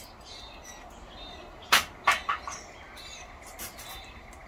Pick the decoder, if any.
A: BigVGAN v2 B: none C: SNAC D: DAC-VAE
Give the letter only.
B